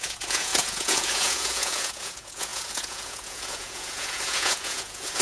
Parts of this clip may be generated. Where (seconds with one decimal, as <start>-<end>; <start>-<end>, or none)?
0.0-5.2